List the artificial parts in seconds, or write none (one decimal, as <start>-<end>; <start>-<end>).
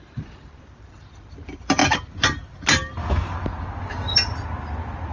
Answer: 0.0-1.8; 4.6-5.1